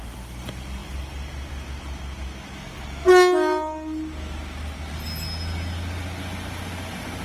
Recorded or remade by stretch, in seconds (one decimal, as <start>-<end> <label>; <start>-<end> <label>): 0.0-7.2 recorded